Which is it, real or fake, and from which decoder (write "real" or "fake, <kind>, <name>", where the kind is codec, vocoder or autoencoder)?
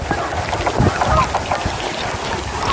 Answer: real